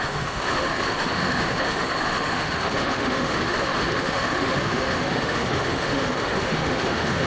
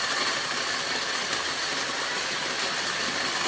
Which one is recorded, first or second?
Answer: second